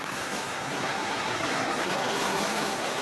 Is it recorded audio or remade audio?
remade